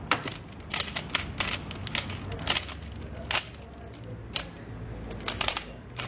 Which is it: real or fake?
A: real